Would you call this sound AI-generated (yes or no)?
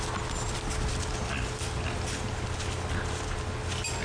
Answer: no